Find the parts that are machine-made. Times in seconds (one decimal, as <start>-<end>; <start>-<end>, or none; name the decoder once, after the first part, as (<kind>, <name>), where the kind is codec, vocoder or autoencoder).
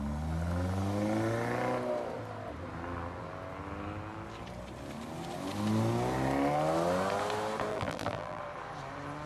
7.7-8.4 (vocoder, BigVGAN v2)